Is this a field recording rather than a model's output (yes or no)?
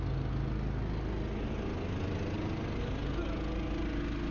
yes